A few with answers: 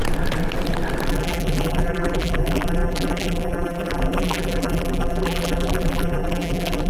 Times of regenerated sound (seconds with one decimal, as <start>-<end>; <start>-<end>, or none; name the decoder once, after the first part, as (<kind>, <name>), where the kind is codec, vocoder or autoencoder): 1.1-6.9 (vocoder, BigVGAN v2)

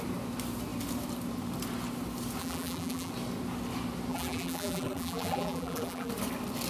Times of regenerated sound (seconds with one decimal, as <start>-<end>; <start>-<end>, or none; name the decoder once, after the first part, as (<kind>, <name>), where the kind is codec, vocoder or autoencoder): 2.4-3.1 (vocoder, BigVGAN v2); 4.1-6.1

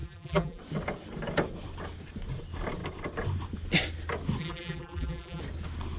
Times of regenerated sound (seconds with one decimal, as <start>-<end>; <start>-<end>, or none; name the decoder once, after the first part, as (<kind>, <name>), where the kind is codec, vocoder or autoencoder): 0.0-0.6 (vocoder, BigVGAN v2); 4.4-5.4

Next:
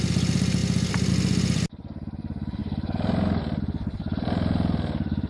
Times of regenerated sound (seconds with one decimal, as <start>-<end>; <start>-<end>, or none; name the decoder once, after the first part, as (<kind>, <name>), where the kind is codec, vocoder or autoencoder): 0.0-0.6 (vocoder, BigVGAN v2); 1.1-2.6; 3.6-5.3

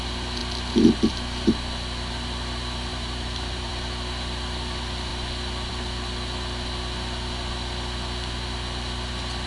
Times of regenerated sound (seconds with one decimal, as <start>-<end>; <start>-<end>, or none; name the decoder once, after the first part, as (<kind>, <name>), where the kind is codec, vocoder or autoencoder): 2.9-3.7 (vocoder, BigVGAN v2)

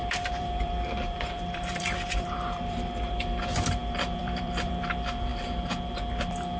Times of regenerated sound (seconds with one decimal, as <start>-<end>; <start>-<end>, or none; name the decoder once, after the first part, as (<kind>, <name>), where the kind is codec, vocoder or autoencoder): 0.0-3.4 (vocoder, BigVGAN v2); 3.8-4.7

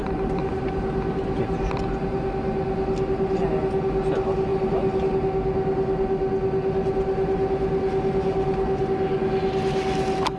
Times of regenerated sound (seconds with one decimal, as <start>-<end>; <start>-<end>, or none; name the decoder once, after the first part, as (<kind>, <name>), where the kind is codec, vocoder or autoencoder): 0.0-0.7 (vocoder, BigVGAN v2); 4.5-5.0

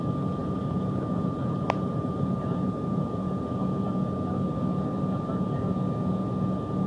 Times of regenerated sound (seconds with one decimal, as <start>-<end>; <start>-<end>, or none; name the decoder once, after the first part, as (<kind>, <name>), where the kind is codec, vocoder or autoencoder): 0.4-3.6 (vocoder, BigVGAN v2)